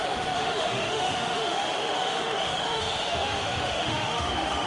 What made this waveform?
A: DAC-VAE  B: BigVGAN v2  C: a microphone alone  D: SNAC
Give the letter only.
A